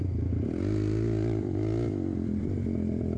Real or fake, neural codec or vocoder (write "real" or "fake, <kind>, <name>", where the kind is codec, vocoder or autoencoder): fake, vocoder, BigVGAN v2